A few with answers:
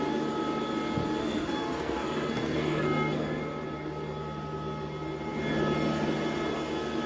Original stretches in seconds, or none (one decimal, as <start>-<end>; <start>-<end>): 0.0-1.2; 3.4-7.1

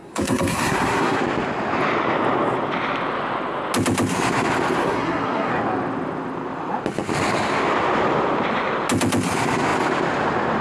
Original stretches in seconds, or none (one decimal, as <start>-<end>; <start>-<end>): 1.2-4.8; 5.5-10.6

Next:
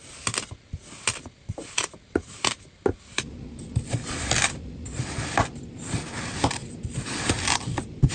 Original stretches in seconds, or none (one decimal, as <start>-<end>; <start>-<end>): 0.0-8.1

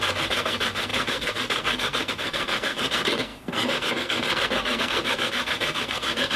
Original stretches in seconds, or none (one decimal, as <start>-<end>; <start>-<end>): none